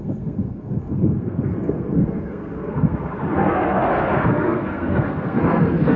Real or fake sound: fake